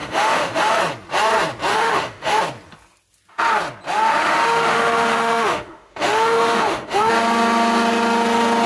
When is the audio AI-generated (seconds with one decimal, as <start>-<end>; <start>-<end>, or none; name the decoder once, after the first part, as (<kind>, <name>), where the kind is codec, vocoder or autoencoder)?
0.0-0.8 (autoencoder, DAC-VAE); 1.7-2.4; 4.1-7.1